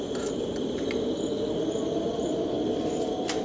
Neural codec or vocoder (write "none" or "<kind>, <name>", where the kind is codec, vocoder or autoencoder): none